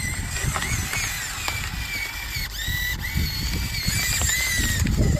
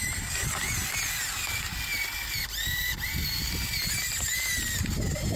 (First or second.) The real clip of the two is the first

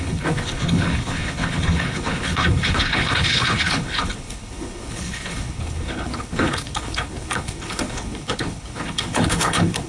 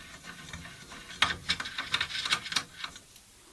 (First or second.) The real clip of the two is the second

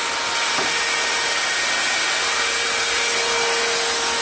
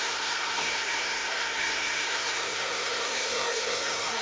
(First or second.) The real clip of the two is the first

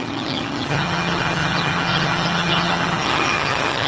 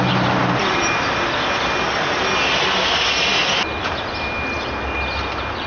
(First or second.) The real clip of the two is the second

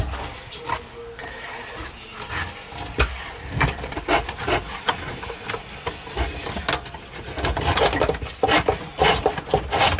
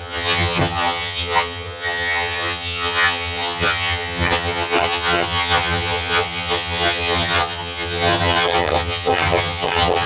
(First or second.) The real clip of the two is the first